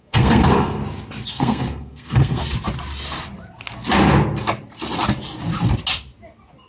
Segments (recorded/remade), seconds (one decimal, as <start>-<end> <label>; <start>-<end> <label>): 0.0-0.8 remade; 0.8-1.3 recorded; 1.3-2.4 remade; 2.4-6.7 recorded